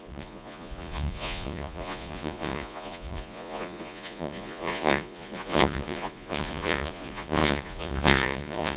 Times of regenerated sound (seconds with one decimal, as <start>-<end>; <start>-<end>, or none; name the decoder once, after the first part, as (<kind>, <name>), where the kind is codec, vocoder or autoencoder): 0.0-8.8 (vocoder, Vocos)